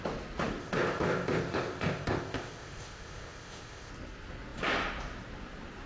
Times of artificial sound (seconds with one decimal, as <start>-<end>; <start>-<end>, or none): 0.6-3.9